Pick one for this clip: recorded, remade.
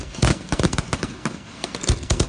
remade